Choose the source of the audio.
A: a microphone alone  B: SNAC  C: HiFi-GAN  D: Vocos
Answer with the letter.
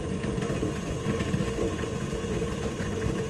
D